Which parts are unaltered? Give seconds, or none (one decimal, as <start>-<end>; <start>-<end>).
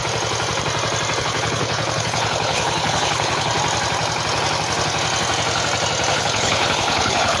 0.0-1.2; 3.5-6.1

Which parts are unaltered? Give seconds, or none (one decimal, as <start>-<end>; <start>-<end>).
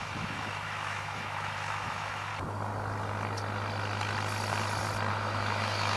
2.3-5.1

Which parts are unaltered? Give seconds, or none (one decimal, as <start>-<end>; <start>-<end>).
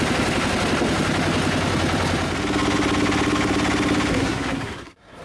0.0-4.1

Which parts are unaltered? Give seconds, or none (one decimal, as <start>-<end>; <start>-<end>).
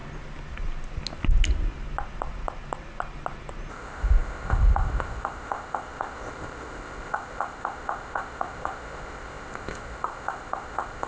0.0-3.7